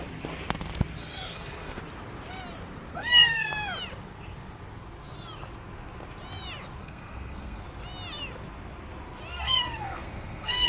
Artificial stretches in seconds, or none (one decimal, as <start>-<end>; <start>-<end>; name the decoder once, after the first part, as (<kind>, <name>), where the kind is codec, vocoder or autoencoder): 1.0-1.8 (codec, SNAC); 2.9-3.5; 6.8-7.6; 9.3-10.7